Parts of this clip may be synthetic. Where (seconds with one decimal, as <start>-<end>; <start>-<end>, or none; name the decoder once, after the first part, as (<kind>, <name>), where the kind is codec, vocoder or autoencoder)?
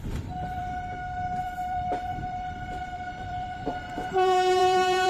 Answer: 0.0-0.6 (vocoder, BigVGAN v2); 1.4-5.1